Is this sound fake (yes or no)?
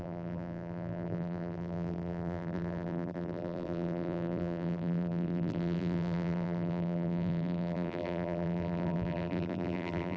yes